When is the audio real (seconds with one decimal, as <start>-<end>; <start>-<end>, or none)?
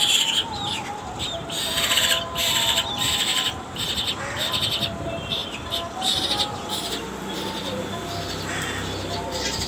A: 0.0-3.3; 3.8-9.7